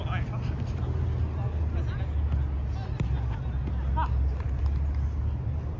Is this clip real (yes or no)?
yes